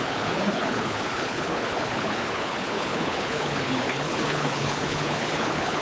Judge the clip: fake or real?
fake